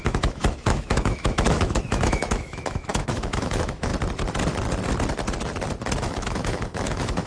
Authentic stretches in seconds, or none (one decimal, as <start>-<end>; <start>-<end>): 3.9-6.0